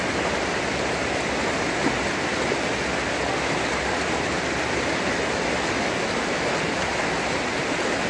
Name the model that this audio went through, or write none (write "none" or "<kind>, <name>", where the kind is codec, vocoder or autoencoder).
none